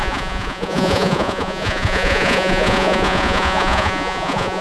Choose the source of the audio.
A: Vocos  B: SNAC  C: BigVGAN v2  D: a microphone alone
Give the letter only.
A